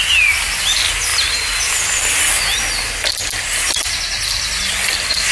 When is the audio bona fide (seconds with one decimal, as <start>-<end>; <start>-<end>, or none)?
0.0-5.3